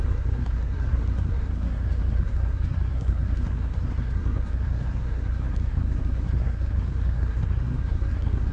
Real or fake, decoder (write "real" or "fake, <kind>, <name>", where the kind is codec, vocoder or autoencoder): fake, codec, SNAC